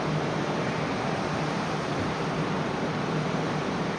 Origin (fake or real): fake